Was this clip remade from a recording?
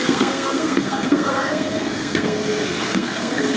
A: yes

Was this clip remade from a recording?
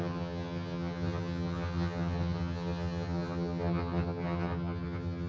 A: yes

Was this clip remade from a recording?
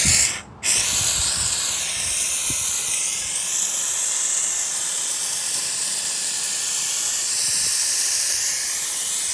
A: no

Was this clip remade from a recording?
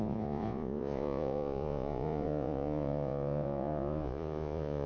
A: yes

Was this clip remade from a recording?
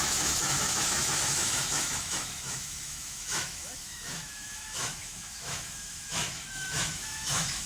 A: yes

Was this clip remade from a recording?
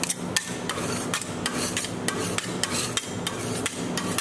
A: no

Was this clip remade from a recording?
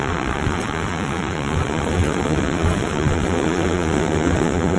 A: yes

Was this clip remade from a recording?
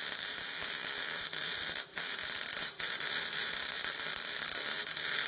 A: yes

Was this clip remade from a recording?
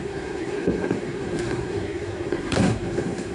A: yes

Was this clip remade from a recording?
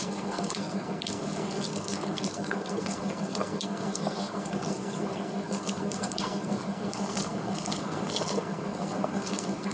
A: yes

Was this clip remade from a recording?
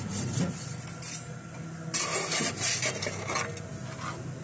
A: no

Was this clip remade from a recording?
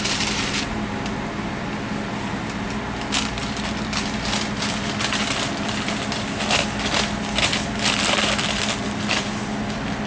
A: no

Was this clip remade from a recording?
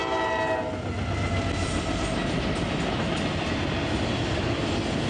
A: no